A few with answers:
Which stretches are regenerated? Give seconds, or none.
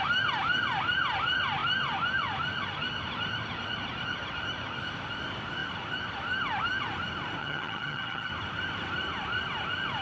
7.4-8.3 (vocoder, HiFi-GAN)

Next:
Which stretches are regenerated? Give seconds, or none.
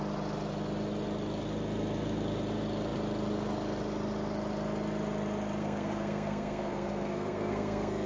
5.6-8.1 (codec, SNAC)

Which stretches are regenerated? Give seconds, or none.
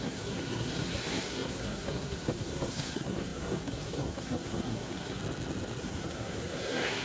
0.0-5.2 (codec, SNAC); 5.8-7.0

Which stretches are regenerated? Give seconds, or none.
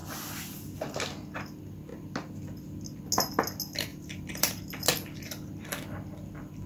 3.9-4.6 (vocoder, BigVGAN v2)